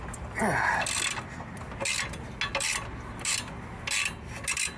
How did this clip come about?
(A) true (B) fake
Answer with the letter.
A